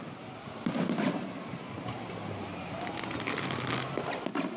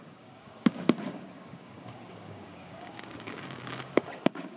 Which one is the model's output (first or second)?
second